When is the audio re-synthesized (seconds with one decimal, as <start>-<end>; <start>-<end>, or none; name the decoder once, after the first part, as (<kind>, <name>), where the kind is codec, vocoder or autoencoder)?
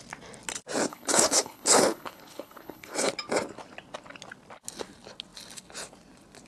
0.9-3.1 (codec, HILCodec)